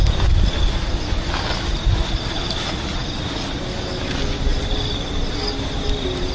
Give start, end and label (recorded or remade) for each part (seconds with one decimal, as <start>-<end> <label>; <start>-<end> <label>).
0.0-4.5 recorded; 4.5-5.3 remade; 5.3-6.3 recorded

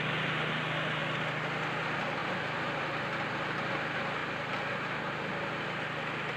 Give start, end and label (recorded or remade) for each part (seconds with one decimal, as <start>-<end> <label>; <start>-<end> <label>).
0.0-2.2 recorded; 2.2-3.7 remade; 3.7-4.2 recorded; 4.2-4.7 remade; 4.7-6.4 recorded

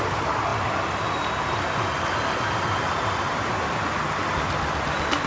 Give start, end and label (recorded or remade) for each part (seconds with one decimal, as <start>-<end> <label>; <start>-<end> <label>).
0.0-5.3 recorded